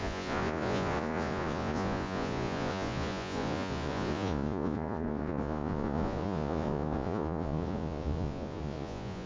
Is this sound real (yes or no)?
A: no